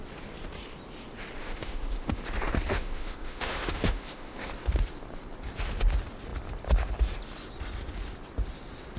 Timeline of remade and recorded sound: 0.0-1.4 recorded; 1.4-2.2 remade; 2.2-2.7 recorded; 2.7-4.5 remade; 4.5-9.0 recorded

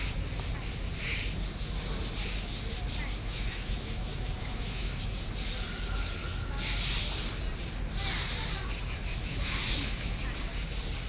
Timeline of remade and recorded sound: 0.0-3.2 recorded; 3.2-5.0 remade; 5.0-9.2 recorded; 9.2-10.2 remade; 10.2-11.1 recorded